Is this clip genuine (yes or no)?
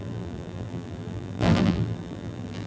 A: no